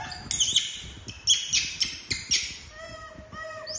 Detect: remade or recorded recorded